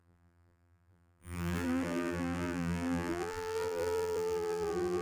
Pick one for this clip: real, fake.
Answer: fake